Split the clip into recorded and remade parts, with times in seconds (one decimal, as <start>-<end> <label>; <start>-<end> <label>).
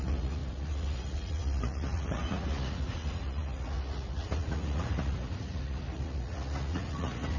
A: 0.0-7.4 remade